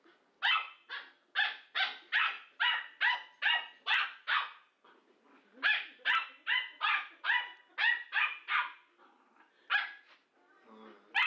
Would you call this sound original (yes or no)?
yes